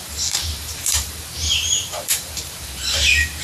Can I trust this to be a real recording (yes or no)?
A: no